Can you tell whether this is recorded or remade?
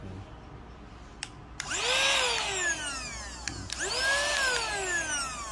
recorded